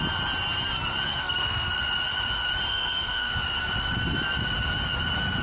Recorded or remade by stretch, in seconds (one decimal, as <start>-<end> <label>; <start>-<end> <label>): 0.0-1.1 recorded; 1.1-1.7 remade; 1.7-2.7 recorded; 2.7-3.3 remade; 3.3-5.4 recorded